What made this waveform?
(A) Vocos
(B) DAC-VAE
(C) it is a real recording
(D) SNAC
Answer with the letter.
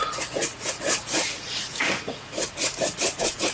A